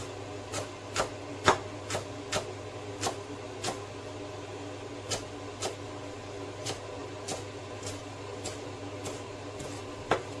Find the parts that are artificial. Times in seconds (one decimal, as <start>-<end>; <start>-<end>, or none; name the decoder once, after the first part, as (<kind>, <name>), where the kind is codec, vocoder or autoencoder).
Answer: none